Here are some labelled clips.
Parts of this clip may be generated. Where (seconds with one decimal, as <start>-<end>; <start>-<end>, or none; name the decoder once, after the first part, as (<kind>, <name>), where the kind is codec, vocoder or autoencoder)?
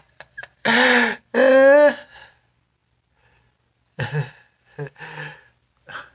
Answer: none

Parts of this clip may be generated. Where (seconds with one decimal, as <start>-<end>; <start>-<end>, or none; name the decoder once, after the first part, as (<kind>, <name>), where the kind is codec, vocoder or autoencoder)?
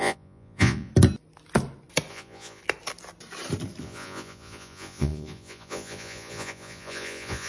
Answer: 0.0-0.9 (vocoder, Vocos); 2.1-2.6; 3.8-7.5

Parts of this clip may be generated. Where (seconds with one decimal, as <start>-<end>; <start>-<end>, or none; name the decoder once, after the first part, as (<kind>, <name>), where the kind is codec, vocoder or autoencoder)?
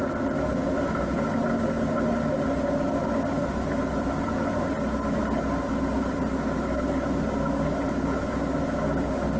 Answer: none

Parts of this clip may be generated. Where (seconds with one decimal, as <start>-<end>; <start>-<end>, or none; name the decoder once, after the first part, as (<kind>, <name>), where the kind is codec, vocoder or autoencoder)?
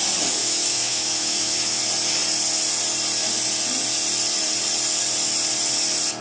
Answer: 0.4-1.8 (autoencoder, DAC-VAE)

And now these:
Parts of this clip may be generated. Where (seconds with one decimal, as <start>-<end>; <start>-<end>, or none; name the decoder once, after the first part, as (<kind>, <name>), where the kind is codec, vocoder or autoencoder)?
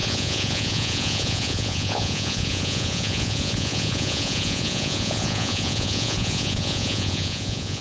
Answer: 0.0-7.8 (vocoder, Vocos)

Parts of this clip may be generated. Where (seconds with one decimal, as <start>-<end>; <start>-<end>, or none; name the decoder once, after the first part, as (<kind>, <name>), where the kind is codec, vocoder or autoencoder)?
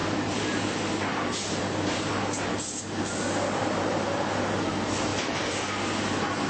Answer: 0.0-2.1 (vocoder, BigVGAN v2); 5.1-5.7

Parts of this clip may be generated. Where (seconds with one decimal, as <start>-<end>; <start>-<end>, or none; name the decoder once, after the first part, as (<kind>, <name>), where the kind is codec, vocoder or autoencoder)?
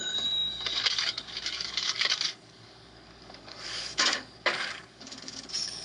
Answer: 0.0-5.8 (codec, DAC)